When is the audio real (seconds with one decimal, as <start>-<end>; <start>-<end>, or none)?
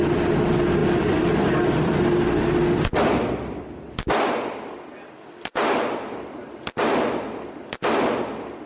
0.0-8.7